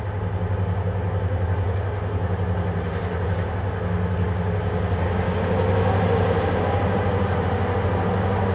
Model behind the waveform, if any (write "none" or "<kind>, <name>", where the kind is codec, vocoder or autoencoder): none